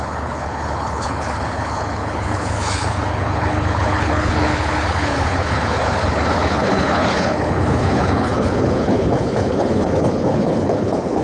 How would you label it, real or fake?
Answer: fake